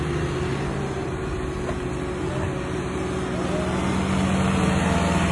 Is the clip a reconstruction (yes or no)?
no